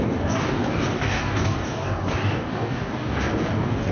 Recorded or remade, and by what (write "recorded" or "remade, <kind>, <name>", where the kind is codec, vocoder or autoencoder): remade, codec, DAC